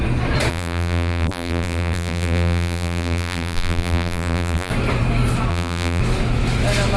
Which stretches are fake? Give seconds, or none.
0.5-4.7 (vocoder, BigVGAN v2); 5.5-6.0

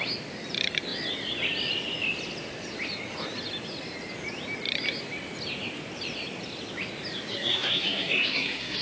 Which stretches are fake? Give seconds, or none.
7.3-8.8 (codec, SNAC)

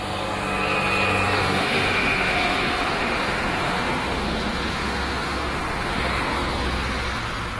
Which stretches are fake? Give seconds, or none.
1.4-6.0 (autoencoder, DAC-VAE)